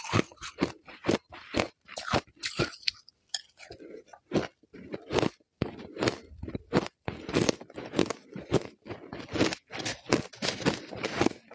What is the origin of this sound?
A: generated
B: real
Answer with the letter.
B